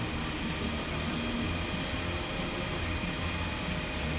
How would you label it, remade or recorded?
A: recorded